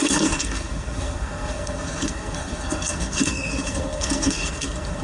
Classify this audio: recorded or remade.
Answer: remade